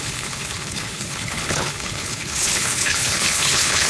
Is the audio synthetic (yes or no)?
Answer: yes